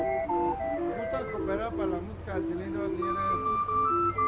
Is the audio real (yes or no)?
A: yes